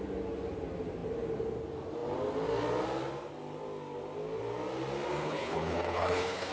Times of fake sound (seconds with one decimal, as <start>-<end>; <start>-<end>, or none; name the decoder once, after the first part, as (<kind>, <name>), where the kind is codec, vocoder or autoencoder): 5.2-6.5 (codec, HILCodec)